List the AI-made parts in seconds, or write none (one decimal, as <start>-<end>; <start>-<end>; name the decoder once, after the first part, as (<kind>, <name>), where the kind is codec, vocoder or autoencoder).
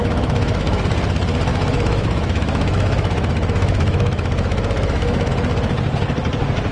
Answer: 0.0-0.8 (autoencoder, DAC-VAE); 1.5-5.3